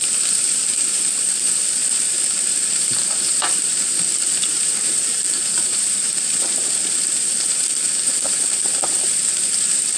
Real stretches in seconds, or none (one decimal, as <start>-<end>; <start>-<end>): none